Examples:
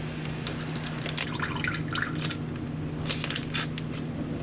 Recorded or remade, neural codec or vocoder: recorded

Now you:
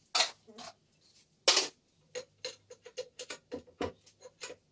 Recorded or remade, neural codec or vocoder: recorded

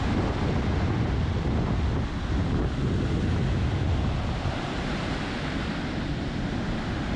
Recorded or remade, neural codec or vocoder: recorded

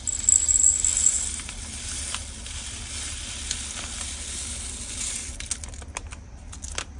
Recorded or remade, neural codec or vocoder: recorded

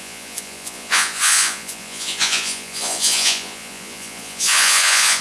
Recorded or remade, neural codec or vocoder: remade, vocoder, Vocos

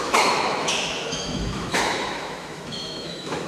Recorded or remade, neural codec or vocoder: remade, autoencoder, DAC-VAE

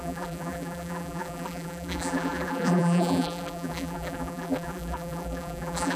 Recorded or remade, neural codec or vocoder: remade, vocoder, BigVGAN v2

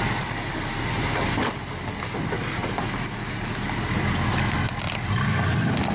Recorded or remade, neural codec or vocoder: recorded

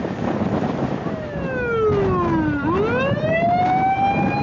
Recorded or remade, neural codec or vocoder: recorded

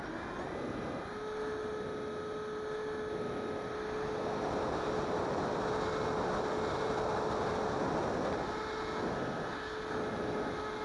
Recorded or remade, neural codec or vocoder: recorded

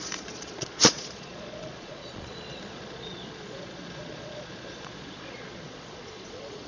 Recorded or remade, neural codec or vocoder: remade, vocoder, Vocos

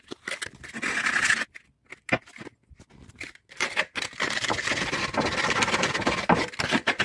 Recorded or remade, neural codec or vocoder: recorded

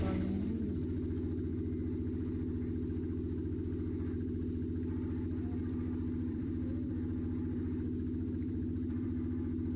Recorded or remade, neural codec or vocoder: remade, vocoder, BigVGAN v2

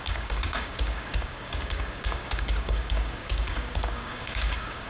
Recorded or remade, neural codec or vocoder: remade, codec, DAC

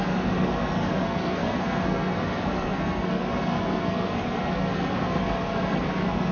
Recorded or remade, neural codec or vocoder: remade, codec, SNAC